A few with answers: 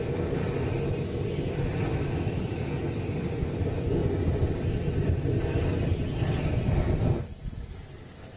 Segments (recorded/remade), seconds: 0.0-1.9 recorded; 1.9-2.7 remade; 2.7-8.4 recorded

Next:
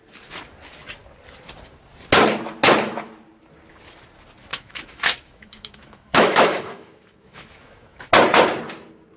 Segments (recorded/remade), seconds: 0.0-4.5 recorded; 4.5-8.1 remade; 8.1-9.2 recorded

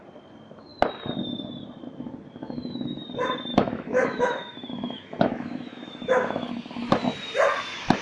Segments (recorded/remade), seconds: 0.0-2.4 recorded; 2.4-3.0 remade; 3.0-3.5 recorded; 3.5-6.5 remade; 6.5-8.0 recorded

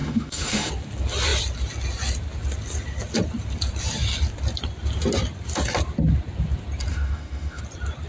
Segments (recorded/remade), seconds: 0.0-0.7 remade; 0.7-6.9 recorded; 6.9-7.6 remade; 7.6-8.1 recorded

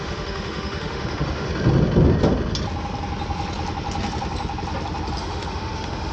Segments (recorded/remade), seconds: 0.0-1.5 remade; 1.5-5.2 recorded; 5.2-6.1 remade

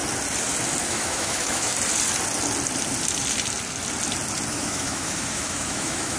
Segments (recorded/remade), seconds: 0.0-0.8 recorded; 0.8-1.7 remade; 1.7-4.5 recorded; 4.5-6.2 remade

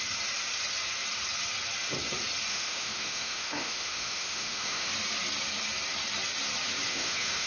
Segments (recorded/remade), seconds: 0.0-2.5 recorded; 2.5-4.9 remade; 4.9-6.9 recorded; 6.9-7.5 remade

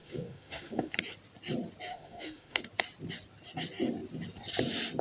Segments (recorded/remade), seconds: 0.0-0.9 remade; 0.9-1.9 recorded; 1.9-2.6 remade; 2.6-5.0 recorded